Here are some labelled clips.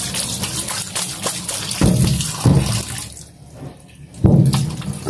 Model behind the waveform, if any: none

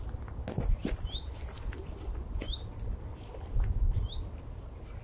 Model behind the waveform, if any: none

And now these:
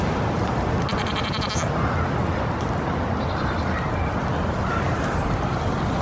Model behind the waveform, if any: none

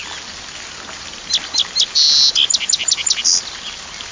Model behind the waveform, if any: none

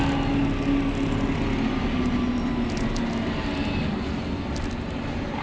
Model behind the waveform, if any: none